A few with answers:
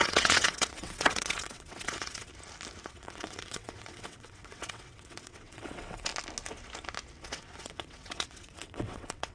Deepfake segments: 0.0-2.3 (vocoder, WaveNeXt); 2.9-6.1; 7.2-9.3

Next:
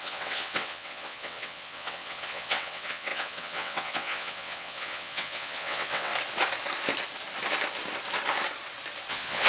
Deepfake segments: 0.0-6.1 (vocoder, WaveNeXt); 9.1-9.5

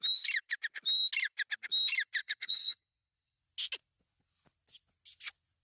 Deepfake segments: 2.2-3.4 (vocoder, WaveNeXt)

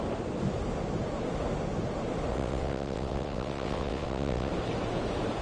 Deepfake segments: 2.3-4.5 (vocoder, WaveNeXt)